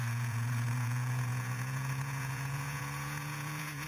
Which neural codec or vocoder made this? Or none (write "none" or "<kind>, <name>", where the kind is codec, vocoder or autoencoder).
vocoder, Vocos